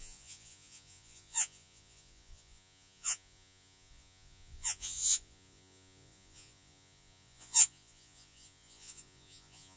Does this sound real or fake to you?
fake